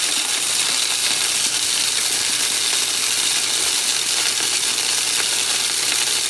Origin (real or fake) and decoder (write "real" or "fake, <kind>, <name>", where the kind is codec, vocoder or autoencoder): real